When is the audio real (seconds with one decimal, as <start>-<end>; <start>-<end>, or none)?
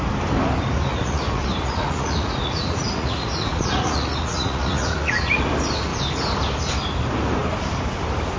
0.0-0.9; 5.4-8.4